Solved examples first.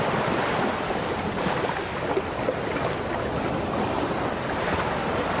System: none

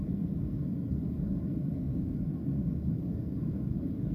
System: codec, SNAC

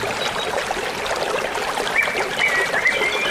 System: none